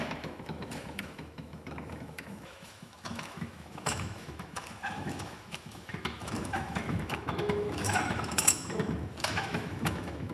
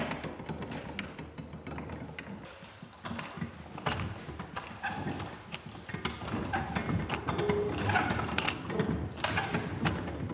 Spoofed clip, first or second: first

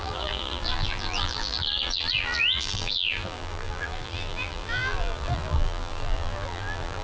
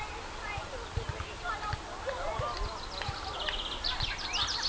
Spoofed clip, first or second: first